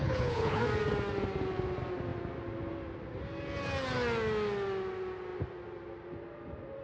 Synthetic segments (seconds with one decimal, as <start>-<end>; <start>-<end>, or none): 0.0-0.6